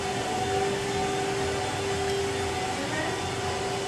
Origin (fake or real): real